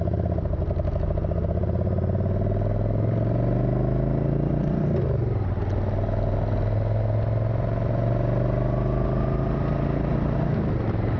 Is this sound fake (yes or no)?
no